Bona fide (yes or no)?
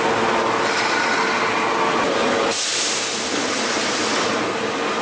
yes